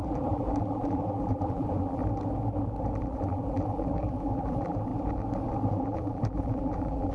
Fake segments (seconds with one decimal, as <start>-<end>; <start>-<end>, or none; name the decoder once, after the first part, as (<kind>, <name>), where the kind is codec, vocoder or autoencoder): 0.0-2.0 (vocoder, BigVGAN v2); 3.0-4.9; 5.7-7.1